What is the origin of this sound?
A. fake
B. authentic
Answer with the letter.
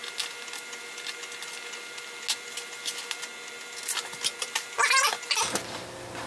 B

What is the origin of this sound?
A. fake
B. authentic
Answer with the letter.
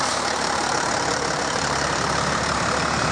A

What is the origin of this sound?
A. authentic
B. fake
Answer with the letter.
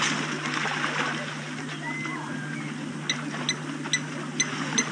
A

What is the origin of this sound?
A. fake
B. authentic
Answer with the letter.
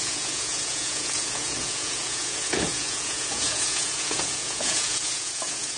A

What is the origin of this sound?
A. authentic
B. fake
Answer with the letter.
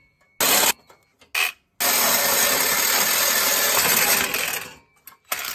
A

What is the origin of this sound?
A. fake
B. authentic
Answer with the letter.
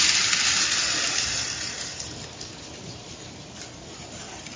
B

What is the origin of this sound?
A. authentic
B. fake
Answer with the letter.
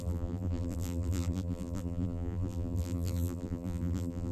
B